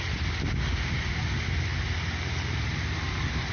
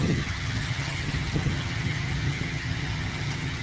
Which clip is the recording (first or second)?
first